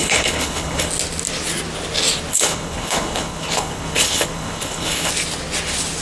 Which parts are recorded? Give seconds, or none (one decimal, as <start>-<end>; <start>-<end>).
0.9-2.3; 5.1-6.0